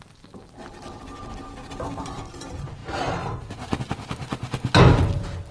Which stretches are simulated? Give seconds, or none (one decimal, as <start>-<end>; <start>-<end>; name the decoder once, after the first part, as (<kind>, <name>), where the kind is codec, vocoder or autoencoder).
none